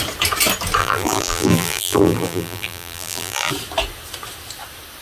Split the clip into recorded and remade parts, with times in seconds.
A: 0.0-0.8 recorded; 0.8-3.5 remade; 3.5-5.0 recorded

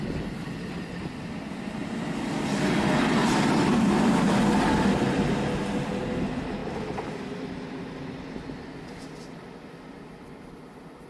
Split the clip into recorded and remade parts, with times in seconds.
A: 0.0-11.1 recorded

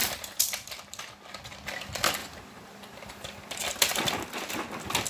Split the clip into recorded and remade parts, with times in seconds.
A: 0.0-1.0 remade; 1.0-2.2 recorded; 2.2-4.5 remade; 4.5-5.1 recorded

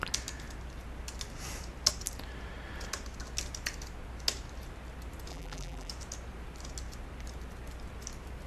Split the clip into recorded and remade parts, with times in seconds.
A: 0.0-5.3 recorded; 5.3-5.9 remade; 5.9-8.5 recorded

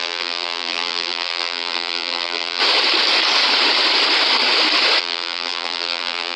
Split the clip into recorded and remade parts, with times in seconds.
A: 0.0-2.6 remade; 2.6-5.0 recorded; 5.0-6.4 remade

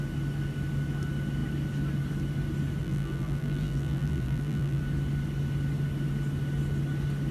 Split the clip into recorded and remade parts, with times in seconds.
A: 0.0-2.8 recorded; 2.8-4.8 remade; 4.8-7.3 recorded